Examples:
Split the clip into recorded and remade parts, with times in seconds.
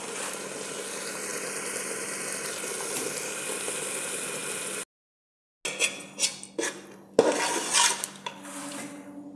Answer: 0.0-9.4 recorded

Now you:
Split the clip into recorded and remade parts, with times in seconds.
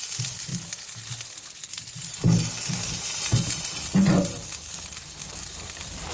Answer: 0.0-6.1 recorded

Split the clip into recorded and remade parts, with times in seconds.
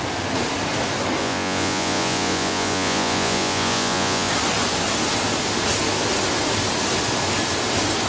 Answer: 0.0-1.2 recorded; 1.2-4.3 remade; 4.3-8.1 recorded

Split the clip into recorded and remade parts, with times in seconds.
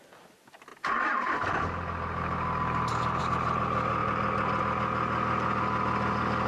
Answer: 0.0-6.5 recorded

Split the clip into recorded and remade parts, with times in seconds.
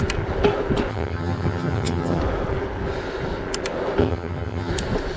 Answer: 0.0-0.9 recorded; 0.9-2.2 remade; 2.2-4.0 recorded; 4.0-4.7 remade; 4.7-5.2 recorded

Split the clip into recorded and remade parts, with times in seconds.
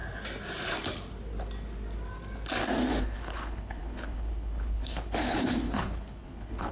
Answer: 0.0-3.0 recorded; 3.0-6.7 remade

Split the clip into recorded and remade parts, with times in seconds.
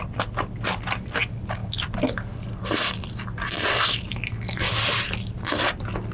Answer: 0.0-6.1 recorded